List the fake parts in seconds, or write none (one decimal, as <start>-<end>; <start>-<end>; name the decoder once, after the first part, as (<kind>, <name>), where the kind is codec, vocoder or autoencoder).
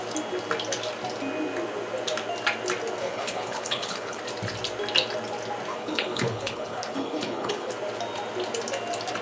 3.0-4.2 (codec, HILCodec); 5.7-7.7